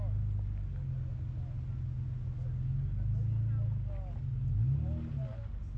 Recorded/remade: recorded